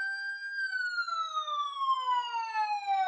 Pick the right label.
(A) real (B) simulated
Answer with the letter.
A